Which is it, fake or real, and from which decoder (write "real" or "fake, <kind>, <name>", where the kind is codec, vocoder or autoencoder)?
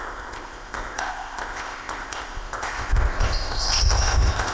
fake, codec, ZipCodec